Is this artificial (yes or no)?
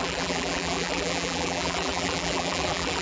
yes